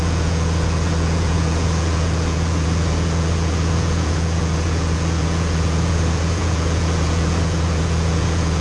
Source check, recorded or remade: remade